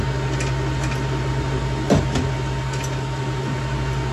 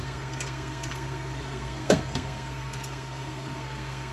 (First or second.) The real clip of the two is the first